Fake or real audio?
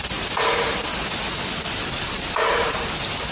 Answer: real